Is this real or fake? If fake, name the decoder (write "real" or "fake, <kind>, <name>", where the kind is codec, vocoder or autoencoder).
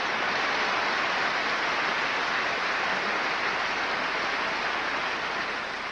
real